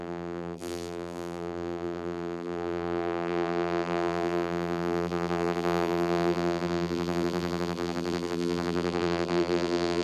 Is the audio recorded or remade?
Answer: remade